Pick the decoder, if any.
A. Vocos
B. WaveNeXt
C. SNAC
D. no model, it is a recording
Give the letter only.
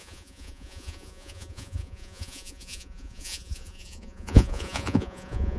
A